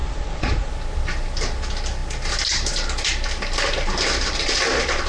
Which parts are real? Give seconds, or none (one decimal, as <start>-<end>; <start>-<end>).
0.7-5.1